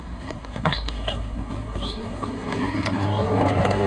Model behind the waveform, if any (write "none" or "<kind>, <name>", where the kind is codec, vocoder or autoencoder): codec, SNAC